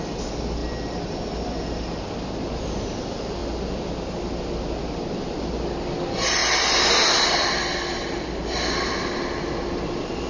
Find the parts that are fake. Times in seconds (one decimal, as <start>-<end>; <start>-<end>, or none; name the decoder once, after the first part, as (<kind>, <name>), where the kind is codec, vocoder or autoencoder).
none